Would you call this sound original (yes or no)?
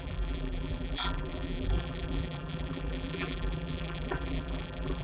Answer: no